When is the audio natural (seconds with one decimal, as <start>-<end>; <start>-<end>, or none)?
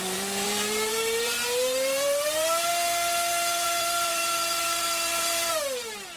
none